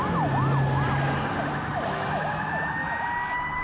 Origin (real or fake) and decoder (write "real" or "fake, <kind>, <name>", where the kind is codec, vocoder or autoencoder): real